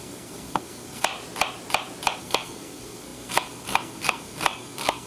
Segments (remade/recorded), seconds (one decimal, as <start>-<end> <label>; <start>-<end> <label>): 0.0-1.1 remade; 1.1-2.2 recorded; 2.2-5.1 remade